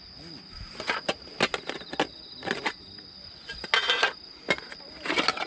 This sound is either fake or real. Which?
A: real